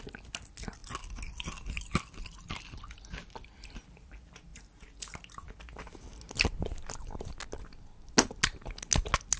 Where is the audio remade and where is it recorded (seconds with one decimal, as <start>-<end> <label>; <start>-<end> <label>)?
0.0-9.4 recorded